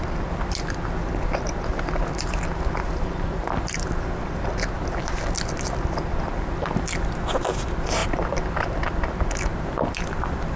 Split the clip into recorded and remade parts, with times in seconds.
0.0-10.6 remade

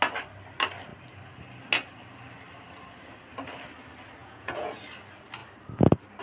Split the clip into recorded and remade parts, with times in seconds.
0.0-4.2 recorded; 4.2-4.8 remade; 4.8-6.2 recorded

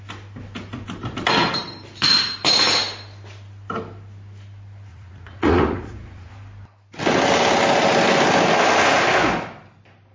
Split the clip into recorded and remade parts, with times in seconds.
0.0-4.9 recorded; 4.9-6.3 remade; 6.3-10.1 recorded

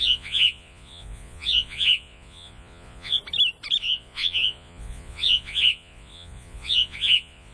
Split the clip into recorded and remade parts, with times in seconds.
0.0-3.2 remade; 3.2-3.8 recorded; 3.8-7.5 remade

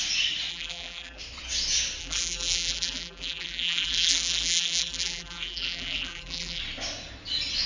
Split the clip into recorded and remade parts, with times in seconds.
0.0-0.5 recorded; 0.5-1.2 remade; 1.2-2.0 recorded; 2.0-6.6 remade; 6.6-7.7 recorded

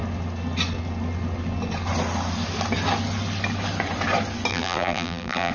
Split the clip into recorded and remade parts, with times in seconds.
0.0-4.5 recorded; 4.5-5.5 remade

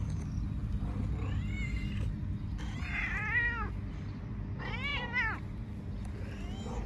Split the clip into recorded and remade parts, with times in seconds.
0.0-6.9 recorded